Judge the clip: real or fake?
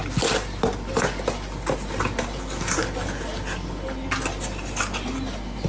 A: real